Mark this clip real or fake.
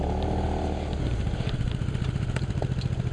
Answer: real